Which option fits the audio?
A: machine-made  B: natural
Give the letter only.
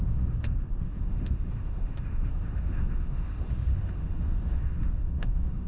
A